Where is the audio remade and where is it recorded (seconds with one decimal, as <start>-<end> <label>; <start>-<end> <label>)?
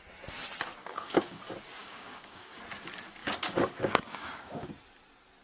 0.0-0.8 recorded; 0.8-1.4 remade; 1.4-1.8 recorded; 1.8-2.6 remade; 2.6-3.2 recorded; 3.2-4.7 remade; 4.7-5.4 recorded